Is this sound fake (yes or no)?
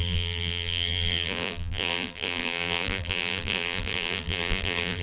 yes